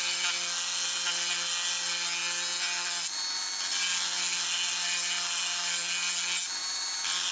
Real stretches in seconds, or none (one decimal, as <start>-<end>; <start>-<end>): 0.0-7.3